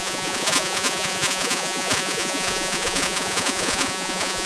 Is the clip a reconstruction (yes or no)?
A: yes